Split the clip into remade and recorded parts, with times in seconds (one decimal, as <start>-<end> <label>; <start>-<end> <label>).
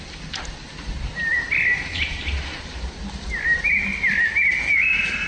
0.0-5.3 recorded